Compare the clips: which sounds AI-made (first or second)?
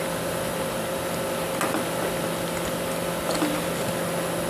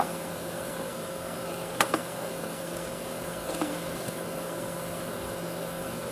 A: second